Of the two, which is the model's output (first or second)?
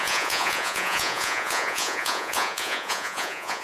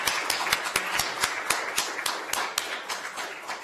first